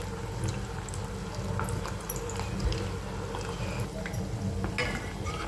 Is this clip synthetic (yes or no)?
no